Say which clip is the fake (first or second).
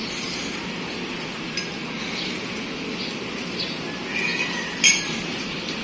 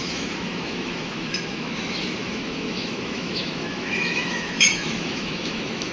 second